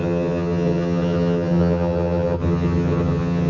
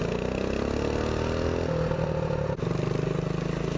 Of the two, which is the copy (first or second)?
first